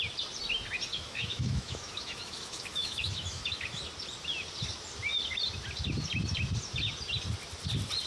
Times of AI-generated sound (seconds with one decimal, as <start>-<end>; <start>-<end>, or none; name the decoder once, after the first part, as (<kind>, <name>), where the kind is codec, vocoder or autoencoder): 0.9-3.8 (autoencoder, DAC-VAE)